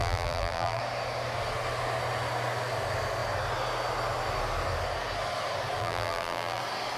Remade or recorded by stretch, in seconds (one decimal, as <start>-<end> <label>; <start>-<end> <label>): 0.0-0.8 remade; 0.8-5.8 recorded; 5.8-6.6 remade; 6.6-7.0 recorded

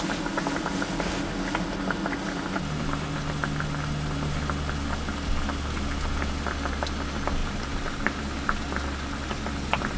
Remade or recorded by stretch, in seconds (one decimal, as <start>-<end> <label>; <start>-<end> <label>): 0.0-7.4 recorded; 7.4-8.2 remade; 8.2-10.0 recorded

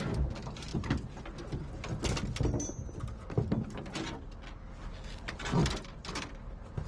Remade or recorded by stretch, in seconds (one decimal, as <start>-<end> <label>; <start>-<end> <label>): 0.0-0.7 recorded; 0.7-1.2 remade; 1.2-5.6 recorded; 5.6-6.3 remade; 6.3-6.9 recorded

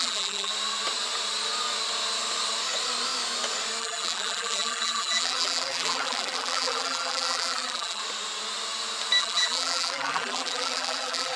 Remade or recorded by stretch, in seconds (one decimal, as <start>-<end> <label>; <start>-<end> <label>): 0.0-0.5 remade; 0.5-3.8 recorded; 3.8-8.0 remade; 8.0-9.2 recorded; 9.2-11.4 remade